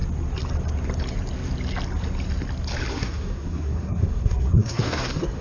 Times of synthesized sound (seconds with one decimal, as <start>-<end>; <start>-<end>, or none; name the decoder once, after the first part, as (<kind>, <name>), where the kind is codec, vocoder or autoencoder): 2.9-5.4 (codec, SNAC)

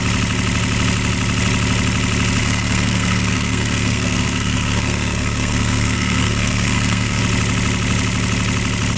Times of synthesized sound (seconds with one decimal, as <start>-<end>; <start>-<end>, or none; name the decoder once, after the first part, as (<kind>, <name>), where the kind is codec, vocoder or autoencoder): 2.4-7.2 (codec, SNAC)